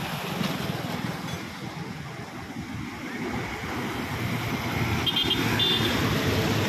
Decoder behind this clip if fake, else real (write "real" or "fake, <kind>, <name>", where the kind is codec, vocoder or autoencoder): real